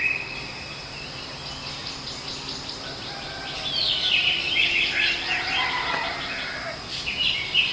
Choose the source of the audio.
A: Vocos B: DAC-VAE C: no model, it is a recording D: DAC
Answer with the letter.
C